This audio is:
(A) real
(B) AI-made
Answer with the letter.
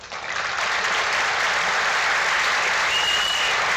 A